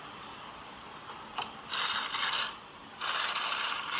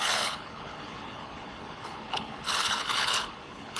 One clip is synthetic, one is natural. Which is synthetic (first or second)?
second